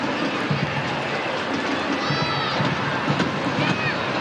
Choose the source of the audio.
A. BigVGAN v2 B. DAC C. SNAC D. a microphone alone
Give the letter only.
D